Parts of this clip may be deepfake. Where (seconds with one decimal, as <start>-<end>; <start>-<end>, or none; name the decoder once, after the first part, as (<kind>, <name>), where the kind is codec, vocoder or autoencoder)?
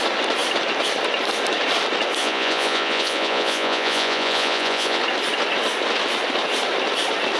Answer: 2.2-5.0 (vocoder, Vocos)